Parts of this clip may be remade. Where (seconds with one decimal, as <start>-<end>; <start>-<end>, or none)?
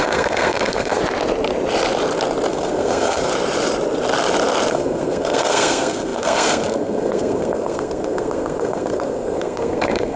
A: 0.0-1.0; 2.5-3.3; 4.7-10.2